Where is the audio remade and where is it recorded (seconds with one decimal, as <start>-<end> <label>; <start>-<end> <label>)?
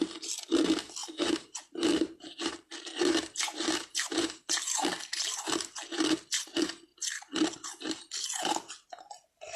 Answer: 0.0-1.0 recorded; 1.0-5.5 remade; 5.5-9.6 recorded